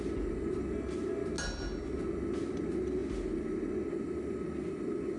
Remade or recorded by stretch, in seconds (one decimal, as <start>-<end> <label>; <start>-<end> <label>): 0.0-5.2 recorded